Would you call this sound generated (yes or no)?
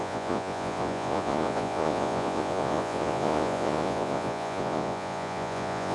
yes